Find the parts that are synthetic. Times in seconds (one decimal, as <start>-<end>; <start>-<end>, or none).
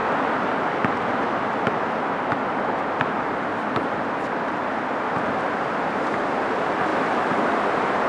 none